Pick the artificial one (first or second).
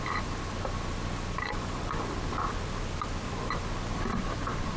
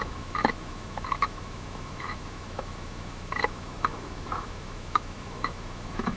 second